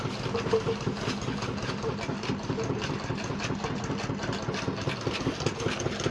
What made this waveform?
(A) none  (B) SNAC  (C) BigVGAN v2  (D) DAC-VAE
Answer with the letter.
A